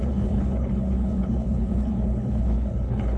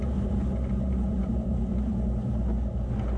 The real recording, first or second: second